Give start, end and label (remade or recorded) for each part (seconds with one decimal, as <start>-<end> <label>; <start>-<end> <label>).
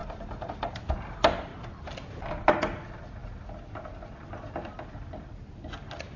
0.0-0.7 remade; 0.7-6.2 recorded